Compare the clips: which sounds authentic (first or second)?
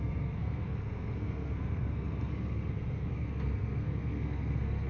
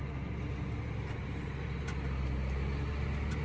second